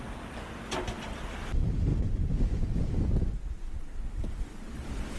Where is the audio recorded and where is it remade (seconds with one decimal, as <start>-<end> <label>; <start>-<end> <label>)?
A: 0.0-5.2 recorded